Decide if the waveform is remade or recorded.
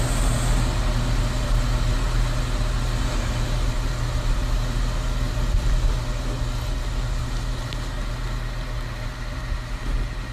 recorded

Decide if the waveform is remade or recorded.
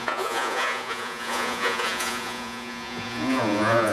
remade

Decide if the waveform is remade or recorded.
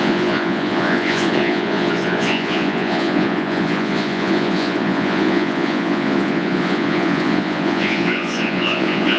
remade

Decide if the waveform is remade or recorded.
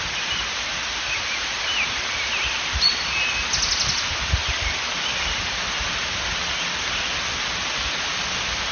recorded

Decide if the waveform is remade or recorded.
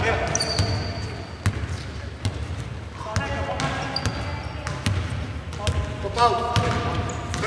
recorded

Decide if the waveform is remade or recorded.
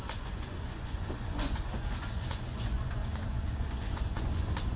remade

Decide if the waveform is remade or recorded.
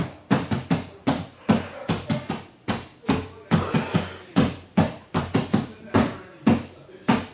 recorded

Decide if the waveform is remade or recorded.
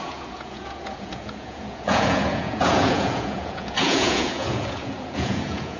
remade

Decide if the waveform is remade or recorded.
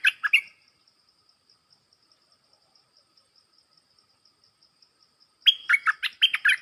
recorded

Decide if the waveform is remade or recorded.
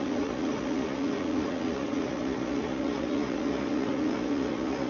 remade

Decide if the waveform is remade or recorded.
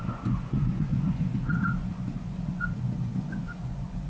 remade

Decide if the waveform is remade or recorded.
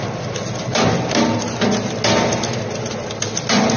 recorded